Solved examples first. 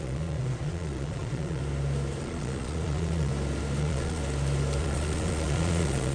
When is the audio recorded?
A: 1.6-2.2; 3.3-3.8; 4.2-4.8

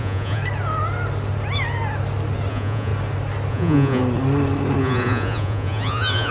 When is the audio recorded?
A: 0.4-2.5; 2.9-3.5; 4.0-4.8

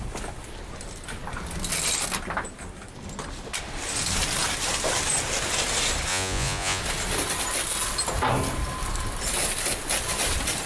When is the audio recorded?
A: 0.0-6.1; 6.8-10.7

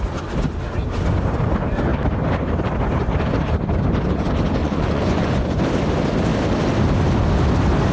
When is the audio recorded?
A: 0.0-4.6; 5.6-7.9

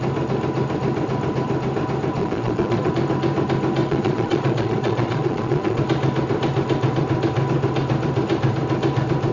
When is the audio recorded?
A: 0.0-2.2; 2.9-3.8; 5.8-9.3

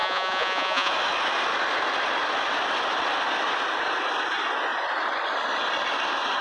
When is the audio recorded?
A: 0.9-6.4

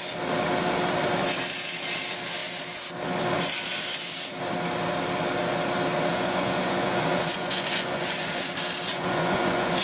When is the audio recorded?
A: 0.0-6.1; 8.5-8.9